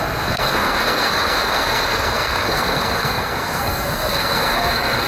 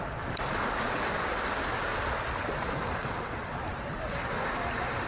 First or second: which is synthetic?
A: first